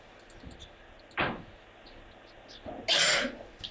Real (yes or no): yes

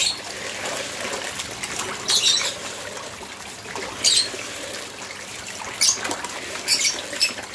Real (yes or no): yes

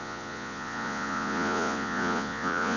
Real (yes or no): no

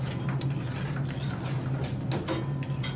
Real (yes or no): yes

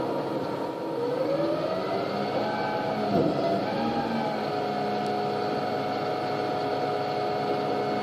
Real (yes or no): yes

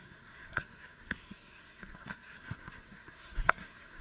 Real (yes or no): no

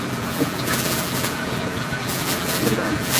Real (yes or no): no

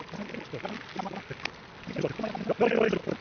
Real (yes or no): yes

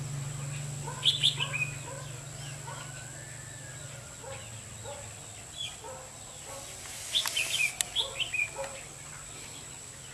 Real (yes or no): yes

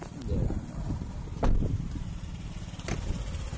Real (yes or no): yes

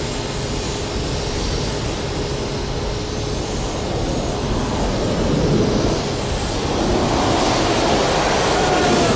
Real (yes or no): yes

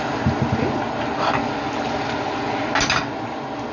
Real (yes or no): yes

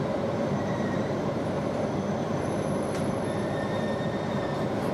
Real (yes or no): no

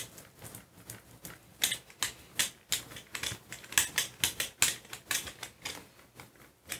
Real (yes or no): yes